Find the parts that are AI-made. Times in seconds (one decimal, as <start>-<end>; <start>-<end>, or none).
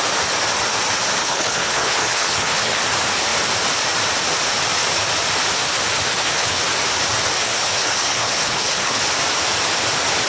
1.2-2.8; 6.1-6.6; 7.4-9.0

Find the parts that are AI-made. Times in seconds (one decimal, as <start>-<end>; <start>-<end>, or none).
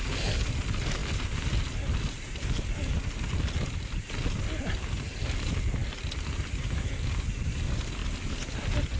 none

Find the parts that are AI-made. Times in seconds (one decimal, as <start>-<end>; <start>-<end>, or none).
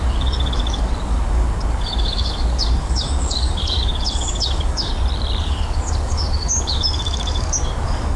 0.0-4.9; 5.4-8.2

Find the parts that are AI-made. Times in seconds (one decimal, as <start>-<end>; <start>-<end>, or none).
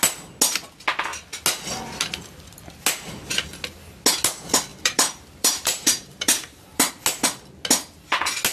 4.7-6.9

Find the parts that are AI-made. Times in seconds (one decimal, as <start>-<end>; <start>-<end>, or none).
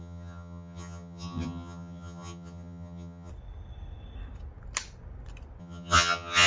0.0-3.3; 5.6-6.5